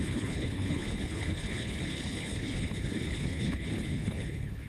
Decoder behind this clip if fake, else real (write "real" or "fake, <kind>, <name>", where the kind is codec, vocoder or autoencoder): fake, codec, HILCodec